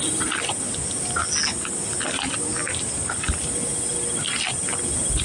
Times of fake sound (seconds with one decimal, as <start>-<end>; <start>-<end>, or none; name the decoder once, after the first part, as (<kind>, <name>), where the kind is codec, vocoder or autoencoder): none